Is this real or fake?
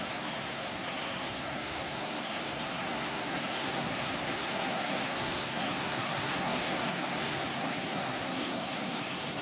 fake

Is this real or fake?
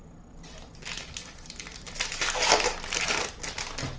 real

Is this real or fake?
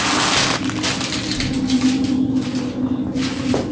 real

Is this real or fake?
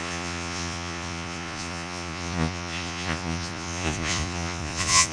fake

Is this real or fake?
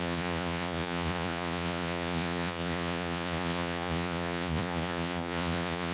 fake